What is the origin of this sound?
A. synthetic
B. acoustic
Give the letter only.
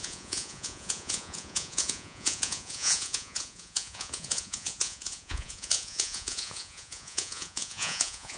A